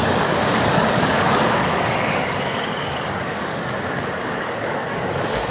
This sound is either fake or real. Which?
fake